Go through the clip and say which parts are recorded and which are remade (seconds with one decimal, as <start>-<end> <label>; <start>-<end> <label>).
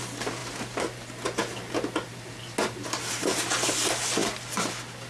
0.0-5.1 recorded